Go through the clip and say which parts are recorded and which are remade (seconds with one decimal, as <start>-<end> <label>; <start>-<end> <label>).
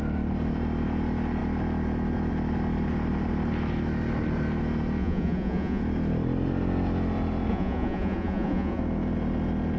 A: 0.0-5.0 recorded; 5.0-5.8 remade; 5.8-7.5 recorded; 7.5-8.8 remade; 8.8-9.8 recorded